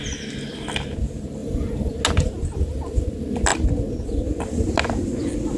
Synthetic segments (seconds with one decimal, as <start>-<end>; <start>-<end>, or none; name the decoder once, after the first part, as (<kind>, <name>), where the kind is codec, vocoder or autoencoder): 1.4-1.9 (vocoder, BigVGAN v2)